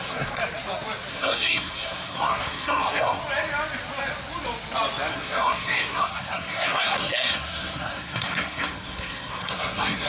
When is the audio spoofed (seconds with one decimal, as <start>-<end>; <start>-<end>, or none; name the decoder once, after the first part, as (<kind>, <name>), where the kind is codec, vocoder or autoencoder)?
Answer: 0.0-0.4 (codec, SNAC); 1.1-3.2; 5.1-10.1